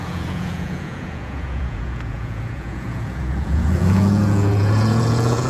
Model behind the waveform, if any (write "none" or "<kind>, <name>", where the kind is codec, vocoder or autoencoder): vocoder, Vocos